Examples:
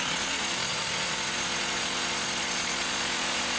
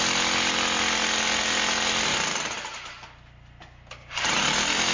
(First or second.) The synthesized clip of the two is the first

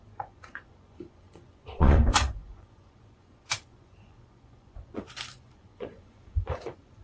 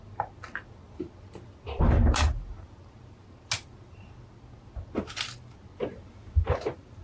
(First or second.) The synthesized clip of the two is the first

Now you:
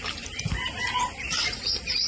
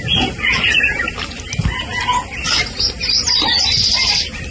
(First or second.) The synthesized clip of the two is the first